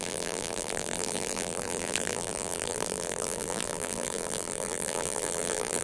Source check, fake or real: fake